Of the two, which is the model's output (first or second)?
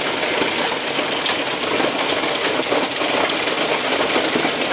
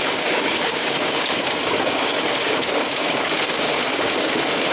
second